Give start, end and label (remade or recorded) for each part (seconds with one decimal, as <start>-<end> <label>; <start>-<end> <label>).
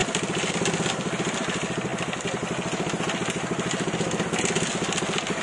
0.0-5.4 recorded